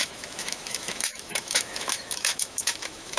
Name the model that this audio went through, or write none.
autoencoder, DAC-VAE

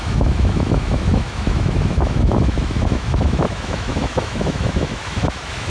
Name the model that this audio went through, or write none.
autoencoder, DAC-VAE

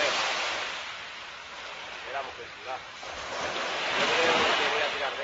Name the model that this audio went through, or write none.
none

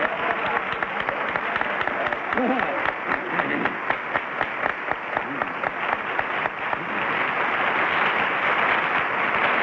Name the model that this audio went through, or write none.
none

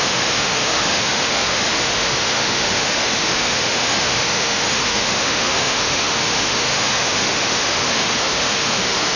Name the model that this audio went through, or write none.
autoencoder, DAC-VAE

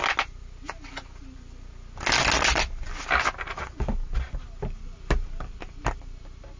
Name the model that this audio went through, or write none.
none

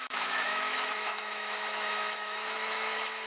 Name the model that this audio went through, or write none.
autoencoder, DAC-VAE